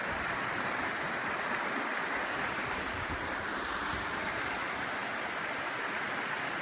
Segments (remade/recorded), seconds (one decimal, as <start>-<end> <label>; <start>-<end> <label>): 0.0-3.8 remade; 3.8-6.6 recorded